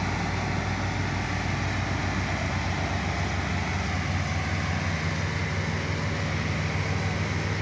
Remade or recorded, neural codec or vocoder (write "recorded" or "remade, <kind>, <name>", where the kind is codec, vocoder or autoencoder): recorded